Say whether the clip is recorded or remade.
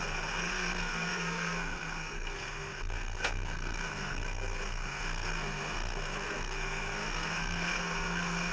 remade